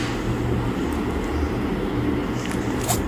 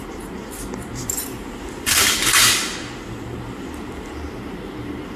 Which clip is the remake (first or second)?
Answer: second